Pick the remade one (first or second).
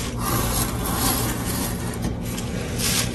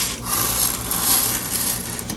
second